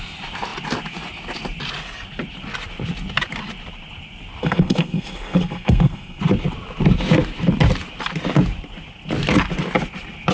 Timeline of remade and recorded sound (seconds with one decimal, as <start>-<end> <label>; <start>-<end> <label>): 0.0-4.4 recorded; 4.4-6.2 remade; 6.2-10.3 recorded